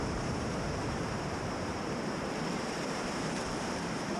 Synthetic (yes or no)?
yes